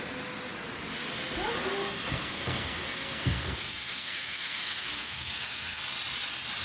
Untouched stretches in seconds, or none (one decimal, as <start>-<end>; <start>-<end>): 0.0-1.8; 5.8-6.6